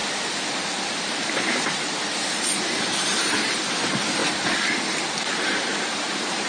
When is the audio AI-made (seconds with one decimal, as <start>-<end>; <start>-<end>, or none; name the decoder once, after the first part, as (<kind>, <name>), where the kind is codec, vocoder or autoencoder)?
1.0-4.2 (vocoder, BigVGAN v2); 5.1-6.5